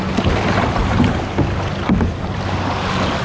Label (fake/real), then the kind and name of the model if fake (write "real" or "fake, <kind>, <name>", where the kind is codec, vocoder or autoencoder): real